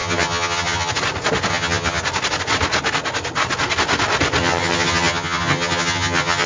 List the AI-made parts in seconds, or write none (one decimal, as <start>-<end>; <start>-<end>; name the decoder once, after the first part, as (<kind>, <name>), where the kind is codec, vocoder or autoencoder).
0.0-0.9 (vocoder, HiFi-GAN); 1.5-2.0; 4.4-6.5